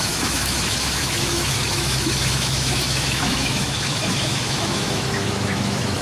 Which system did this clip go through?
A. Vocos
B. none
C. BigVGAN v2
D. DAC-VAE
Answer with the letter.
D